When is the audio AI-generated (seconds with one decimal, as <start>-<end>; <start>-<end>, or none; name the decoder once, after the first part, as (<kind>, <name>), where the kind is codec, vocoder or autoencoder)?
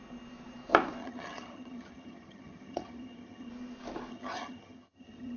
1.0-3.5 (vocoder, HiFi-GAN); 4.1-5.4